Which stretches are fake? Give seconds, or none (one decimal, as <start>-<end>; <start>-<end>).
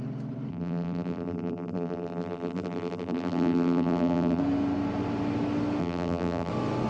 0.5-4.4; 5.8-6.5